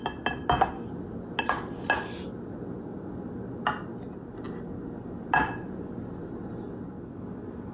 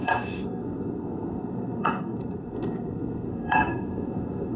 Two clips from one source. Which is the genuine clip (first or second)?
first